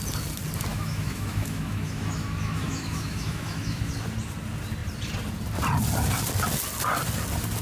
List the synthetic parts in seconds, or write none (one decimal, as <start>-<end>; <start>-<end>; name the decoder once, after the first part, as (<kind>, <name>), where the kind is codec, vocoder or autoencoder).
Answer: 0.7-3.9 (autoencoder, DAC-VAE)